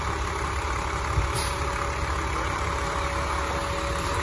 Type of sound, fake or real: real